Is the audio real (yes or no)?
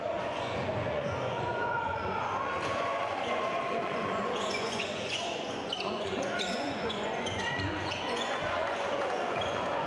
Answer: no